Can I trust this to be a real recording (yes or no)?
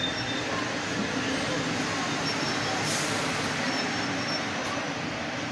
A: yes